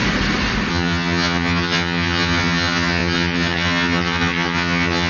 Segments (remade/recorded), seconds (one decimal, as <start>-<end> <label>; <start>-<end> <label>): 0.0-0.7 recorded; 0.7-5.1 remade